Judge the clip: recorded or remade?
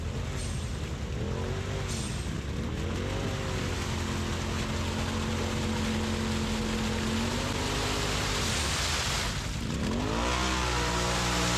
recorded